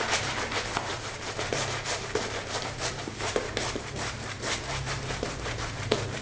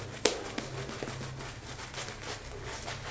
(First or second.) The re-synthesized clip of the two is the first